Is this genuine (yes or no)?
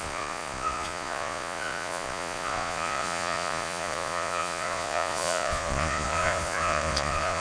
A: no